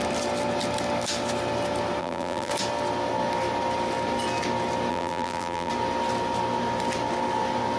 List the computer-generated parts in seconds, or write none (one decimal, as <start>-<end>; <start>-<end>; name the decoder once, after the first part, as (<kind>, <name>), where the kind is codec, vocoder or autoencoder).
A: 2.0-2.5 (vocoder, BigVGAN v2); 4.9-5.7